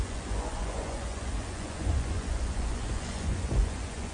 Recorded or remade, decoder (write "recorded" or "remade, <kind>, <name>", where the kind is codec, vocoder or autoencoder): remade, vocoder, Vocos